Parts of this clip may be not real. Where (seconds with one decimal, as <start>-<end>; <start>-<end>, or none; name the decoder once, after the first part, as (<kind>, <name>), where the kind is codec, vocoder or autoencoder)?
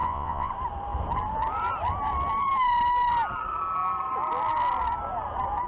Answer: 0.0-0.5 (vocoder, Vocos)